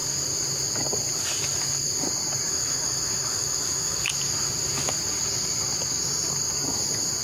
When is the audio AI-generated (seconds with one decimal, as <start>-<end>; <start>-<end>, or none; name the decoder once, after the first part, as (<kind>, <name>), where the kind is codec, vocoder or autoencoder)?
2.5-4.1 (autoencoder, DAC-VAE)